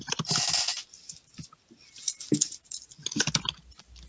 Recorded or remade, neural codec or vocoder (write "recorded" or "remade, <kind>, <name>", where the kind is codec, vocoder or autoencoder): recorded